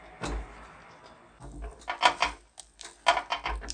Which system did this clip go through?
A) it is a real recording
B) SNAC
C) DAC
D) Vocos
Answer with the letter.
A